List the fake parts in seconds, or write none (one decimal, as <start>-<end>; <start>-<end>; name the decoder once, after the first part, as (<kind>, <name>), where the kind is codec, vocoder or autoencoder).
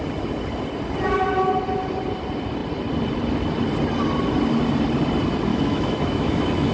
5.5-6.7 (autoencoder, DAC-VAE)